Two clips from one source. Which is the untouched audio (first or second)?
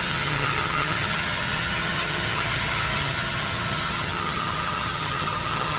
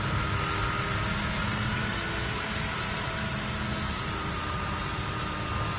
second